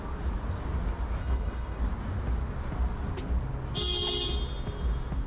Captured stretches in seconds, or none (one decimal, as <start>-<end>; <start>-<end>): 0.0-1.2; 1.8-5.3